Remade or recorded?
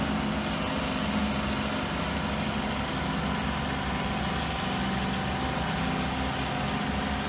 recorded